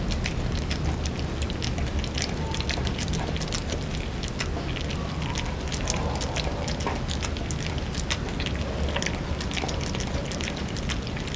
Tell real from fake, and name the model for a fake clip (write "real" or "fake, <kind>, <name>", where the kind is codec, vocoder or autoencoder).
real